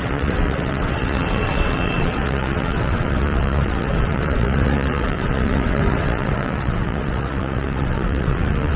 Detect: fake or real fake